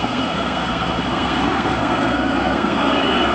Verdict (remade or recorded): remade